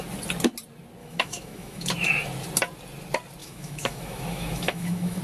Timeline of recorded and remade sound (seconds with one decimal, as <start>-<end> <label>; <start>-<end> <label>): 0.0-1.0 recorded; 1.0-1.9 remade; 1.9-3.4 recorded; 3.4-5.2 remade